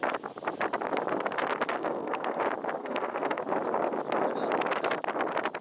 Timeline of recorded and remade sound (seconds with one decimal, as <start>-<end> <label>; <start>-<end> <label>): 0.0-1.8 recorded; 1.8-2.4 remade; 2.4-2.8 recorded; 2.8-3.4 remade; 3.4-5.6 recorded